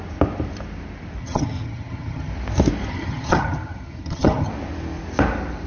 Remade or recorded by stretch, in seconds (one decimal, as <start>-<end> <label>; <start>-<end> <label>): 0.0-1.2 recorded; 1.2-2.3 remade; 2.3-2.9 recorded; 2.9-4.5 remade; 4.5-5.7 recorded